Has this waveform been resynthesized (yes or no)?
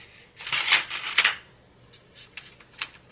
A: no